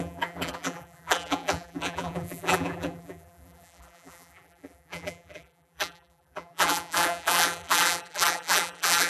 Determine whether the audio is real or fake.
fake